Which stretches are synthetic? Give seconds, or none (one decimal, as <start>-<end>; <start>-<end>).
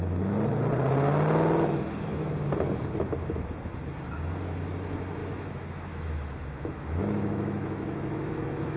5.2-8.8